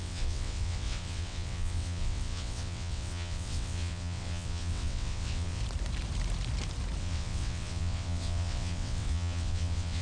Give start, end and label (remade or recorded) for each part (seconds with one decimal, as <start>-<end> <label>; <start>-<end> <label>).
0.0-5.6 remade; 5.6-7.0 recorded; 7.0-10.0 remade